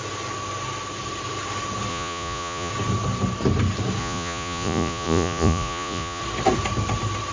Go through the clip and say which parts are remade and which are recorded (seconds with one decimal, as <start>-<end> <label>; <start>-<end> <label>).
0.0-1.9 recorded; 1.9-2.7 remade; 2.7-4.0 recorded; 4.0-6.2 remade; 6.2-7.3 recorded